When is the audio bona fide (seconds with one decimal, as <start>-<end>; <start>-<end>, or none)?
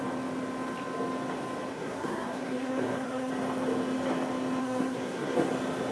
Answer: 0.0-1.7; 3.3-4.6; 5.5-5.9